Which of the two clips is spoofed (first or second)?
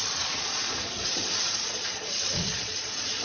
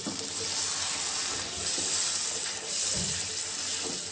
first